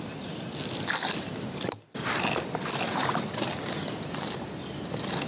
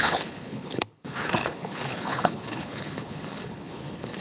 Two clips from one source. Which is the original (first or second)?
first